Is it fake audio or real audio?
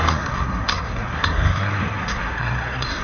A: fake